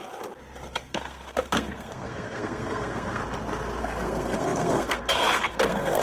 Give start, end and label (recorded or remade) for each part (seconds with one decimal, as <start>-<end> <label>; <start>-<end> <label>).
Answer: 0.0-0.7 recorded; 0.7-3.2 remade; 3.2-3.8 recorded; 3.8-6.0 remade